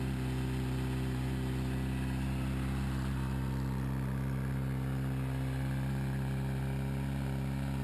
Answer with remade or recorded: recorded